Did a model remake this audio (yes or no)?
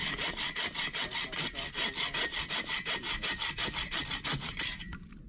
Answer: yes